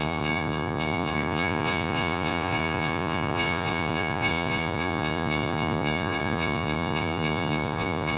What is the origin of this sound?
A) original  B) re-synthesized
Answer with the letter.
B